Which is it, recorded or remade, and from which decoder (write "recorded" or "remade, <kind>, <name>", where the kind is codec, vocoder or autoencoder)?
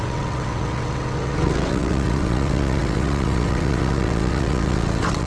remade, vocoder, WaveNeXt